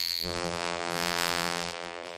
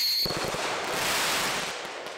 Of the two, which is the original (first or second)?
second